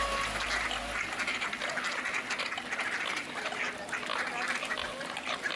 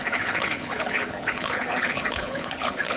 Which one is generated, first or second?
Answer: second